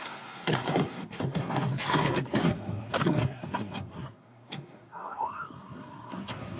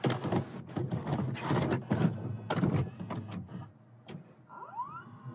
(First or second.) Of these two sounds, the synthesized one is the first